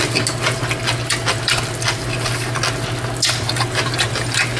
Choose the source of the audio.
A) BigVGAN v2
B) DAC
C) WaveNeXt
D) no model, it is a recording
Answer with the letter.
D